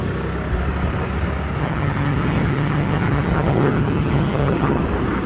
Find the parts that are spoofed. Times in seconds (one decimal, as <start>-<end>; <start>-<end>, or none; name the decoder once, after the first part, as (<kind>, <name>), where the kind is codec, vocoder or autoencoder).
1.6-4.8 (vocoder, HiFi-GAN)